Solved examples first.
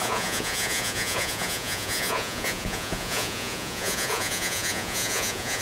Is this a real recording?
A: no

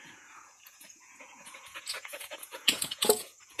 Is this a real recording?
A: no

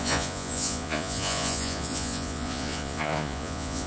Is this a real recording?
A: no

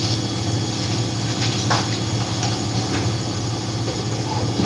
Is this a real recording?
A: yes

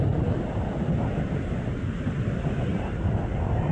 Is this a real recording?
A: yes